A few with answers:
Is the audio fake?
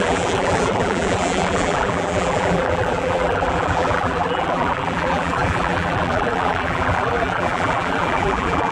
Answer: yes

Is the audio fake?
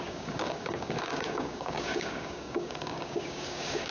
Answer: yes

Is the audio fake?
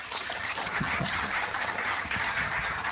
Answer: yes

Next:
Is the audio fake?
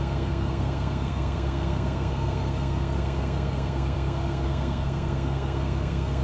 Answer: yes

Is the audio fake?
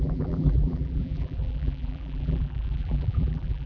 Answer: yes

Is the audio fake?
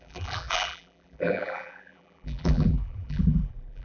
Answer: yes